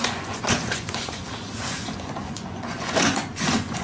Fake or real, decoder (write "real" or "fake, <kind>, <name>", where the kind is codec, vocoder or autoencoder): fake, vocoder, Vocos